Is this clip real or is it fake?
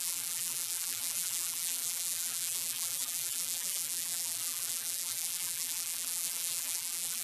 fake